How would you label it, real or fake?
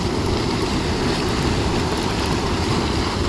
real